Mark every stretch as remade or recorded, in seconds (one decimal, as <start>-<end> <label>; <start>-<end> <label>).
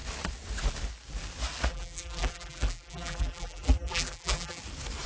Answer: 0.0-1.7 recorded; 1.7-4.6 remade; 4.6-5.1 recorded